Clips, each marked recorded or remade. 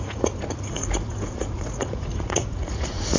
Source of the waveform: remade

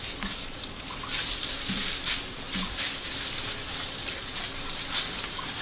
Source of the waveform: recorded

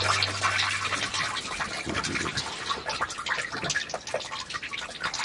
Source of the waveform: recorded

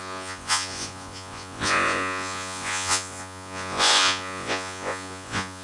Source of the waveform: remade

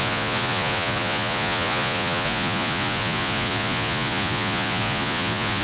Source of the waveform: remade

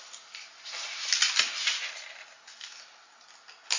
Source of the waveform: recorded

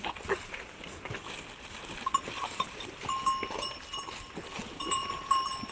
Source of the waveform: recorded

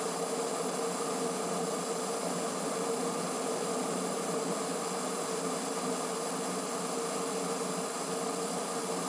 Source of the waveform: recorded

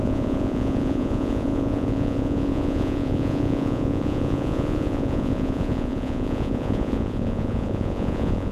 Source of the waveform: remade